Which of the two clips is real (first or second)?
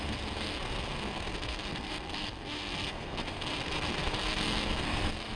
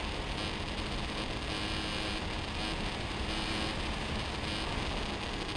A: second